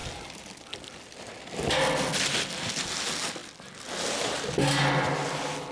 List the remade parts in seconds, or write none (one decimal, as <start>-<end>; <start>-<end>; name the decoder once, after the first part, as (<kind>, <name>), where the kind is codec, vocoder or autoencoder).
none

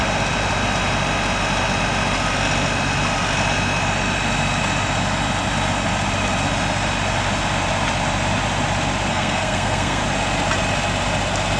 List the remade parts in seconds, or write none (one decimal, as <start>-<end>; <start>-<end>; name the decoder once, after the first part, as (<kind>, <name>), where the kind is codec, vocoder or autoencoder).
9.1-10.0 (codec, SNAC)